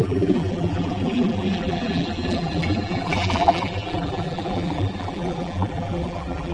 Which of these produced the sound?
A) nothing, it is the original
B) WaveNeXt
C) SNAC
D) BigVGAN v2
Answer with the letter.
D